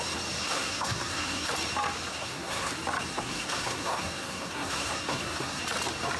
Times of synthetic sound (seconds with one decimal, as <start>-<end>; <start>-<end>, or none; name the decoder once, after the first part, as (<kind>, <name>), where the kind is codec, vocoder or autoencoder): 0.4-1.5 (codec, SNAC); 2.1-2.7; 3.1-5.6